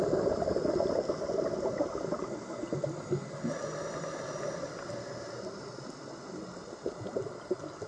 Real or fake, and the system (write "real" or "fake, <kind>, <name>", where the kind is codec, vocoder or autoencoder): real